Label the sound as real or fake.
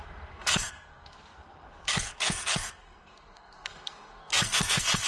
fake